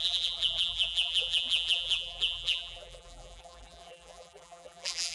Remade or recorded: remade